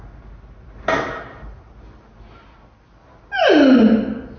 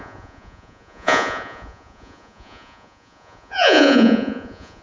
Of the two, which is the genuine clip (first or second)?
first